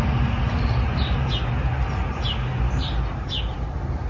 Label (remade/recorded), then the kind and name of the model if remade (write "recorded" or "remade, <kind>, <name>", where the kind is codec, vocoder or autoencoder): recorded